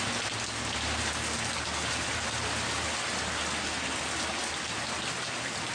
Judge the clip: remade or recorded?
recorded